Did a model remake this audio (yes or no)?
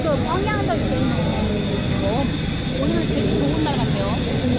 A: no